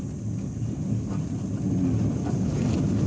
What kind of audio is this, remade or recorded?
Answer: recorded